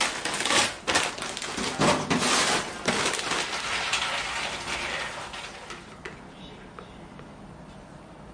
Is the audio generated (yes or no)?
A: no